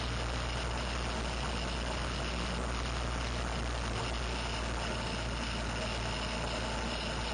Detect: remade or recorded recorded